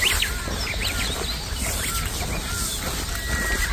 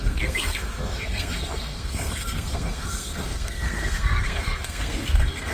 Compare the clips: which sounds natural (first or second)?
first